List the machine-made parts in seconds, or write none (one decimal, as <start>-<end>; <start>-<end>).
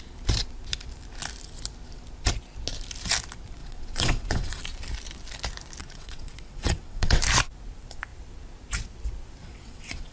3.6-4.6; 5.8-7.2; 9.4-10.1